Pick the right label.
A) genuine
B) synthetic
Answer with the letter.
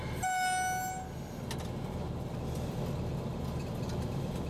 A